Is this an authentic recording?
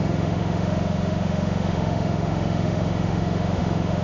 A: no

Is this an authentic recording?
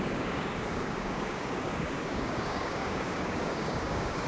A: no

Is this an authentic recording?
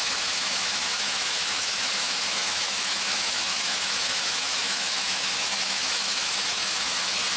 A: no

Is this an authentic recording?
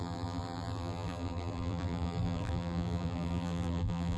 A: no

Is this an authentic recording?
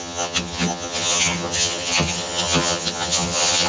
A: no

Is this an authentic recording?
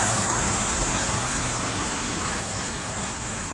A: no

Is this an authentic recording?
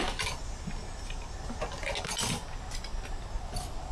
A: yes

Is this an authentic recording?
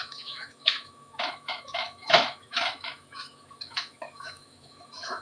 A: no